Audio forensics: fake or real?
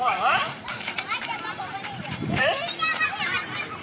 fake